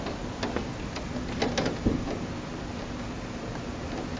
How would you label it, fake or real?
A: real